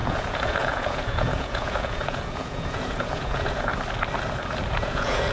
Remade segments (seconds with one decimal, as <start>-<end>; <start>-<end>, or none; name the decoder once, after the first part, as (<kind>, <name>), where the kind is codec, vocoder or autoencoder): 0.0-3.7 (vocoder, Vocos); 4.7-5.3